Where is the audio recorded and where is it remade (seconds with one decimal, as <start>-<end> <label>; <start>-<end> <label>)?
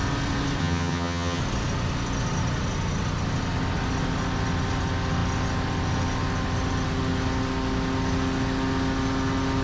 0.0-0.6 recorded; 0.6-1.4 remade; 1.4-9.6 recorded